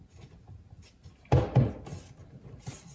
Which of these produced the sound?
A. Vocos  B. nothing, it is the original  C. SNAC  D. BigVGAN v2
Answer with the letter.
B